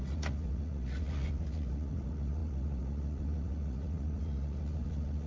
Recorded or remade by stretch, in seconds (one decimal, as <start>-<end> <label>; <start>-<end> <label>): 0.0-5.3 remade